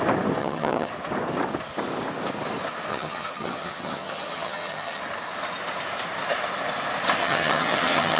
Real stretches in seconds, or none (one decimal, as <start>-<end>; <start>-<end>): 0.0-0.4; 0.9-2.9; 5.0-7.2